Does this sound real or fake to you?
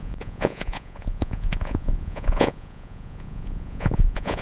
fake